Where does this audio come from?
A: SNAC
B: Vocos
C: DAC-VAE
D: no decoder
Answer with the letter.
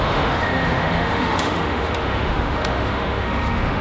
C